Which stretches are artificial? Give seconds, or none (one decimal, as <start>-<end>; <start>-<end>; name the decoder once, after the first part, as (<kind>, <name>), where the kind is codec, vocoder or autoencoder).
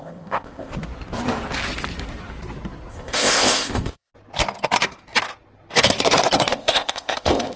0.0-0.7 (codec, ZipCodec); 2.9-4.1; 6.5-7.6